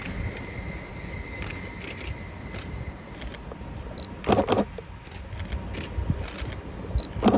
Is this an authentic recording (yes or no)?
yes